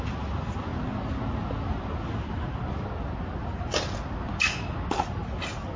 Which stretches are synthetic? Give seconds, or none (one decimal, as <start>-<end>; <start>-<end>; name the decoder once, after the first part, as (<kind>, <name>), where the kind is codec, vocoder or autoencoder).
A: none